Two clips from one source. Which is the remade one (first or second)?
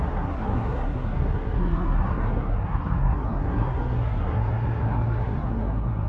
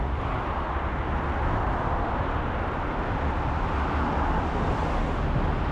first